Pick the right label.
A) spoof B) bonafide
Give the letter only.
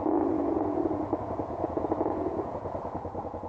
A